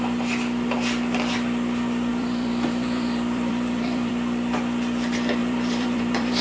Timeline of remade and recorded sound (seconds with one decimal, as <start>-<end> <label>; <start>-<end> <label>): 0.0-2.1 recorded; 2.1-4.1 remade; 4.1-5.4 recorded; 5.4-6.4 remade